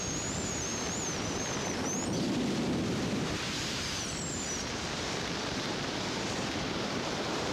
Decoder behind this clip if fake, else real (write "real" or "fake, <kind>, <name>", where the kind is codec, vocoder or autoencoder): fake, vocoder, BigVGAN v2